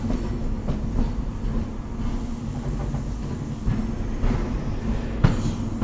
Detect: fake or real real